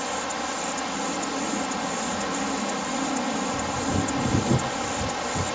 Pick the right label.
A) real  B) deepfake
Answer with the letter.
A